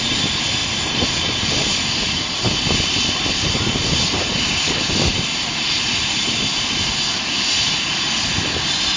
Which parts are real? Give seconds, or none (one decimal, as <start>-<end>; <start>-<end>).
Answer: 0.0-9.0